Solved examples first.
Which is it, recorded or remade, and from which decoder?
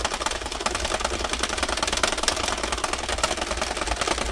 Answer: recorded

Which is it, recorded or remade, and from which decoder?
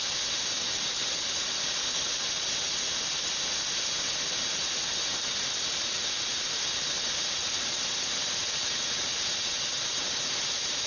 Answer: recorded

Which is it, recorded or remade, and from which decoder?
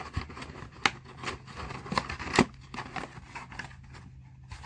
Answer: recorded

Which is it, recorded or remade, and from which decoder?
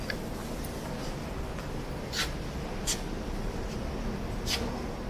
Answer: recorded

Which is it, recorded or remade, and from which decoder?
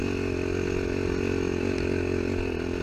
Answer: recorded